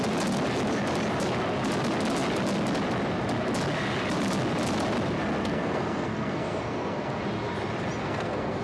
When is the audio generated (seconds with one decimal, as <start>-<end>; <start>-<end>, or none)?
5.4-7.2; 8.0-8.6